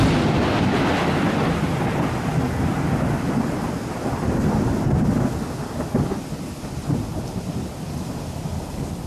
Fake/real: real